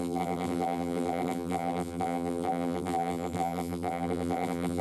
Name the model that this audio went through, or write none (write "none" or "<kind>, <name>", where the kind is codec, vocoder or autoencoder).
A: vocoder, BigVGAN v2